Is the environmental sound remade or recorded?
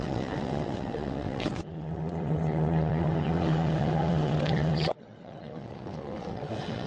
remade